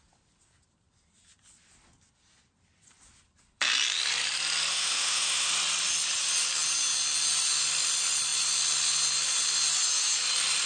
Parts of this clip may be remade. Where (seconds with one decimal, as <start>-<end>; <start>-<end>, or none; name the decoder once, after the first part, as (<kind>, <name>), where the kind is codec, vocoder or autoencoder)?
4.7-5.5 (autoencoder, DAC-VAE)

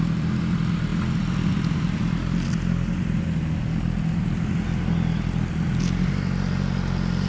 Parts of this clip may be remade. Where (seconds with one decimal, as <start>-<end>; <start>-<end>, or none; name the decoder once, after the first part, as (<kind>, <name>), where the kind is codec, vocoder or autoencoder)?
none

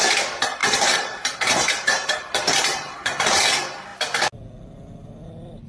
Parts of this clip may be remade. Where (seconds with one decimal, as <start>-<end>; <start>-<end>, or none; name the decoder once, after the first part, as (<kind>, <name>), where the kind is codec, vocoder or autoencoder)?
0.6-3.4 (vocoder, BigVGAN v2)

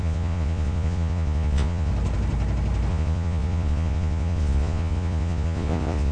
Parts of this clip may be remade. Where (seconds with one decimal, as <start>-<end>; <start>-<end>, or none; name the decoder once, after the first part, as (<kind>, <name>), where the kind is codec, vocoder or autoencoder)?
0.0-1.9 (vocoder, Vocos); 2.9-6.1

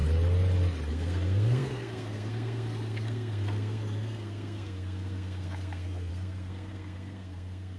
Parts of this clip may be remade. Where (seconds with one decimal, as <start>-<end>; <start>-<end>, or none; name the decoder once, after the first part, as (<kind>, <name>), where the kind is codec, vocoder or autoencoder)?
0.9-7.8 (codec, SNAC)

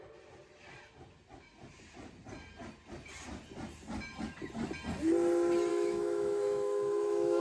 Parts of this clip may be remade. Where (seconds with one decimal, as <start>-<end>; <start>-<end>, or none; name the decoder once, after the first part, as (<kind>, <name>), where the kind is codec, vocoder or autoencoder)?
5.7-7.4 (autoencoder, DAC-VAE)